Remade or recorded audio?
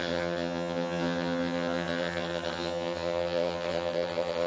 remade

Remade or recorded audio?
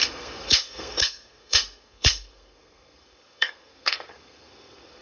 remade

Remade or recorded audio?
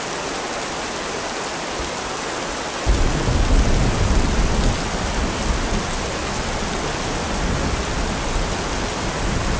recorded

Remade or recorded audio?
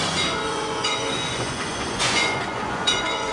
remade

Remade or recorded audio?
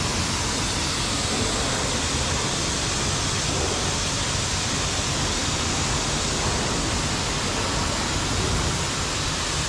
recorded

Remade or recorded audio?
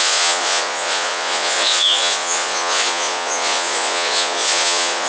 remade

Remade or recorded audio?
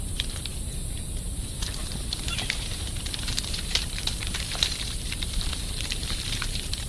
remade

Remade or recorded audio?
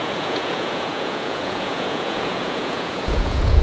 remade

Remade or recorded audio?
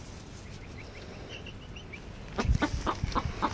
recorded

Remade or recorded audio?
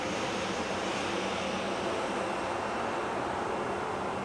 recorded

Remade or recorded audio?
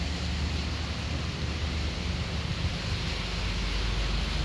recorded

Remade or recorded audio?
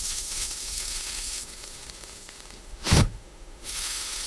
remade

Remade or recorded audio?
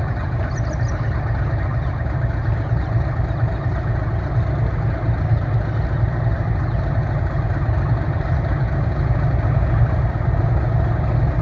recorded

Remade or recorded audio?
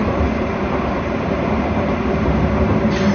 remade